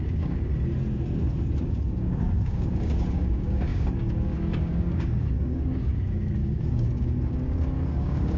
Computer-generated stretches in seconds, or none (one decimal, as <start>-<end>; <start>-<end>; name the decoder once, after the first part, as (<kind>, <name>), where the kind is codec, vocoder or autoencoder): 0.0-0.5 (codec, DAC); 1.6-8.4

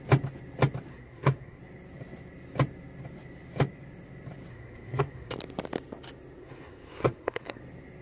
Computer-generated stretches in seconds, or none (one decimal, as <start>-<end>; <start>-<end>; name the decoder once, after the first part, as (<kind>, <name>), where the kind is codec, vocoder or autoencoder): 0.9-1.6 (codec, SNAC); 4.5-5.3; 6.4-7.6

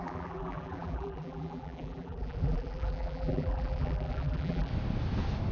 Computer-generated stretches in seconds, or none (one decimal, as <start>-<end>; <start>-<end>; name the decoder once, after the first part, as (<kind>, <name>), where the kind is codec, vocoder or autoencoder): 0.0-4.7 (vocoder, BigVGAN v2)

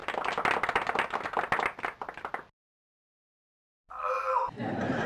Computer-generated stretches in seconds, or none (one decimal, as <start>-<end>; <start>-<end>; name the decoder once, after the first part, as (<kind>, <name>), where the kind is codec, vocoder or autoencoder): none